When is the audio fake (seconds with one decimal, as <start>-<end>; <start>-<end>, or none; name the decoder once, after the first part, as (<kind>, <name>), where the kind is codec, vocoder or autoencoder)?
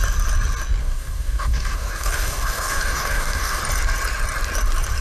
0.8-3.6 (codec, DAC)